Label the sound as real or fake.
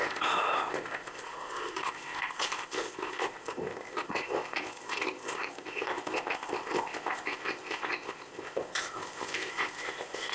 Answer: fake